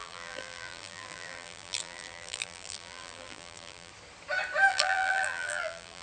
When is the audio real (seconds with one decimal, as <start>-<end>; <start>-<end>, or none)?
3.9-4.7